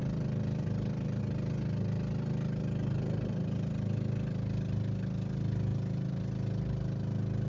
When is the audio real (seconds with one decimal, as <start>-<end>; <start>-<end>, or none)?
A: 1.2-7.5